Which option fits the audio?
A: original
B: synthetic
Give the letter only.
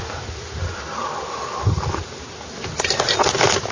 A